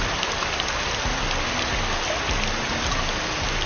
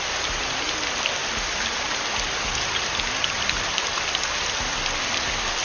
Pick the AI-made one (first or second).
second